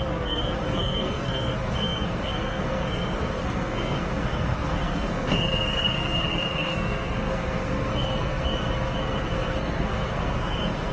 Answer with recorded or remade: remade